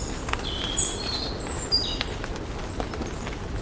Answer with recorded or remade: recorded